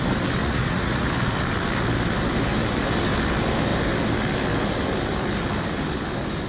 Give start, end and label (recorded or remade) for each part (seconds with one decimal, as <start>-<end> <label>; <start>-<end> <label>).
0.0-0.4 recorded; 0.4-1.1 remade; 1.1-6.5 recorded